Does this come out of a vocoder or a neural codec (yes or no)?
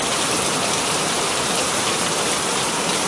yes